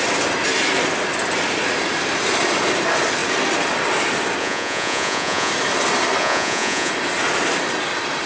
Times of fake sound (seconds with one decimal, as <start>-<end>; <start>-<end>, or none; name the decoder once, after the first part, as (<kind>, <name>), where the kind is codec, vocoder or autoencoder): 4.4-5.5 (vocoder, Vocos); 6.2-6.9